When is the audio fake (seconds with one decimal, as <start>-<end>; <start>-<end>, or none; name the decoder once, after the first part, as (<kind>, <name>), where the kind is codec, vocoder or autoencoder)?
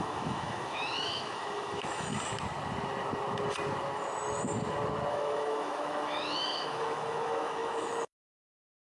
0.0-2.1 (autoencoder, DAC-VAE); 5.1-8.9